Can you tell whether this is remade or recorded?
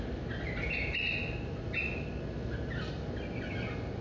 recorded